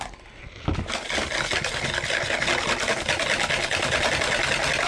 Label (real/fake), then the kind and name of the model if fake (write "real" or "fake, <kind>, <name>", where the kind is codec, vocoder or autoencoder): real